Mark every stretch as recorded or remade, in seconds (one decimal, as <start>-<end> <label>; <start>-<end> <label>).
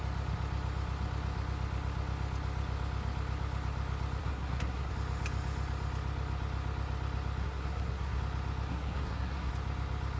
0.0-4.2 recorded; 4.2-4.9 remade; 4.9-7.4 recorded; 7.4-8.2 remade; 8.2-8.7 recorded; 8.7-9.5 remade; 9.5-10.2 recorded